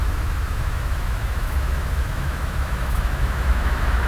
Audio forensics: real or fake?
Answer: fake